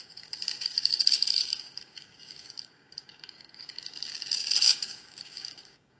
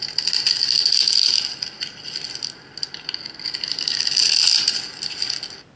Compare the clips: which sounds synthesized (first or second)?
first